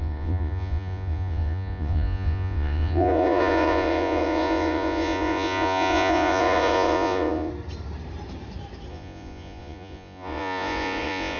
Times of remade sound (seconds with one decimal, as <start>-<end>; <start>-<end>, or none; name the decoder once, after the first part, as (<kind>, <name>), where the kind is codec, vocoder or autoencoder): 0.0-7.5 (vocoder, Vocos); 8.9-11.4